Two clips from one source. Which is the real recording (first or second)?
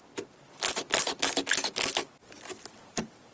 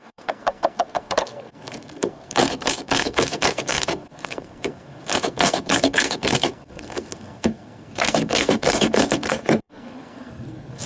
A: first